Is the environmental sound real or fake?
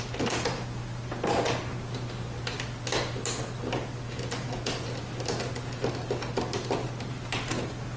real